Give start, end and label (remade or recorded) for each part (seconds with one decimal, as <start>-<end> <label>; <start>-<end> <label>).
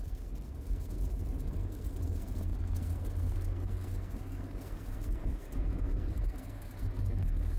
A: 0.0-7.6 remade